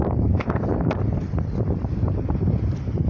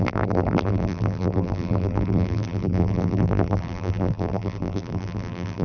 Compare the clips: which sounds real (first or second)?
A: first